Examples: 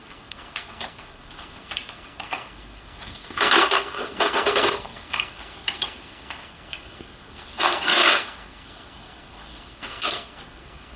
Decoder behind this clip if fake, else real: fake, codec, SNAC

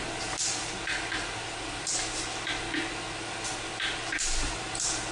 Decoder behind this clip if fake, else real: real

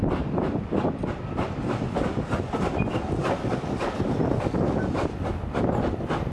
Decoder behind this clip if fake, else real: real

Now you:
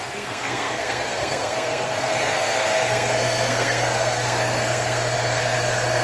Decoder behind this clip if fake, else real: fake, codec, SNAC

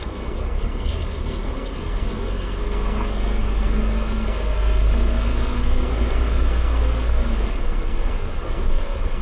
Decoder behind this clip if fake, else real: fake, codec, SNAC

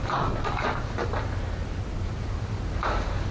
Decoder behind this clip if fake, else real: real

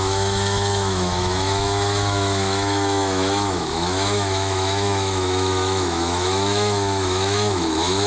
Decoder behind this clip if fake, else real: fake, autoencoder, DAC-VAE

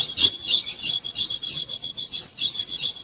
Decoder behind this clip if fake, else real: fake, vocoder, WaveNeXt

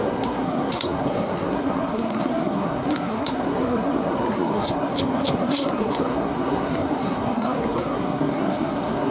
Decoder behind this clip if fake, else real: fake, codec, SNAC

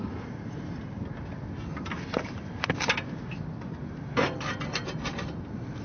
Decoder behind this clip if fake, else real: real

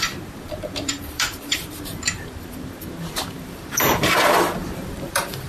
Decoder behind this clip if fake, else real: fake, vocoder, BigVGAN v2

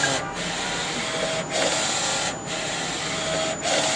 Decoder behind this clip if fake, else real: real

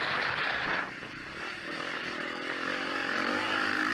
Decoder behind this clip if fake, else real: fake, codec, DAC